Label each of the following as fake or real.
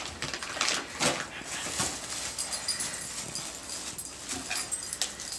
real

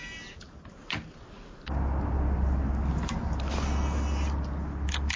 real